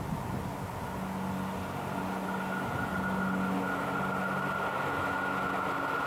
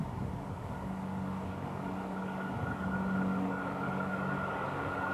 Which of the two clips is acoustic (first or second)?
first